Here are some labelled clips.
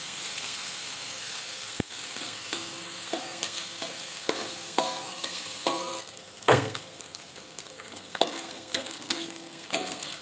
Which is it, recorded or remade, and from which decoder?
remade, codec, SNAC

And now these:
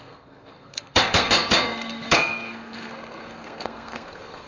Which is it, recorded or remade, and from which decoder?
remade, codec, SNAC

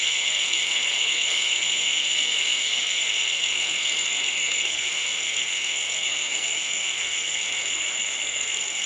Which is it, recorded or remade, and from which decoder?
remade, codec, SNAC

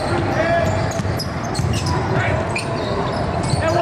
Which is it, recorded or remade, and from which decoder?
recorded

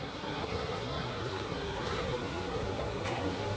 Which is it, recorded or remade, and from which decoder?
remade, codec, SNAC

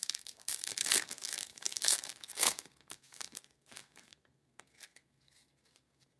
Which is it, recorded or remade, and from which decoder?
remade, codec, SNAC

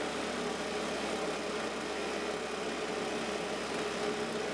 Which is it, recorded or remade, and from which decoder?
recorded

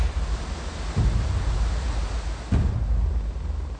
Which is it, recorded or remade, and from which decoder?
recorded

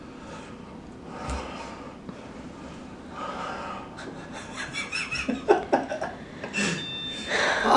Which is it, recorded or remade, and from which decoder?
recorded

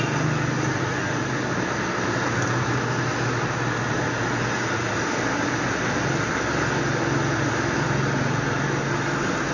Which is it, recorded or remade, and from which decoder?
recorded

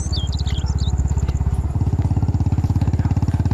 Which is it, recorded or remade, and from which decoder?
recorded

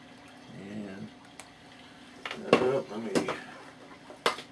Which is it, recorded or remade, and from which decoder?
recorded